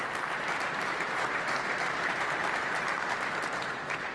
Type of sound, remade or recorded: remade